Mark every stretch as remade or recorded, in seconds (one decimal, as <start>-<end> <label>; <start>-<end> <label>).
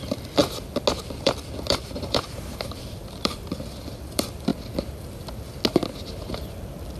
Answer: 0.0-0.4 remade; 0.4-1.1 recorded; 1.1-4.5 remade; 4.5-7.0 recorded